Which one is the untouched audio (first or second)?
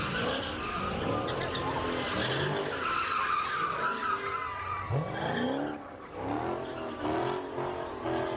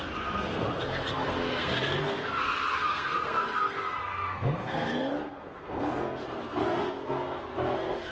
first